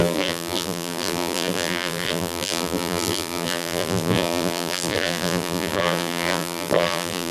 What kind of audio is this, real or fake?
fake